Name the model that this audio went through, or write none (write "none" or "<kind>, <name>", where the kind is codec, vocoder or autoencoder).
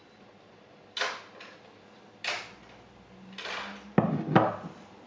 none